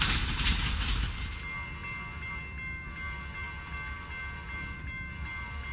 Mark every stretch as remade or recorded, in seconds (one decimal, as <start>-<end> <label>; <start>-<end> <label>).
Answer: 0.0-5.7 recorded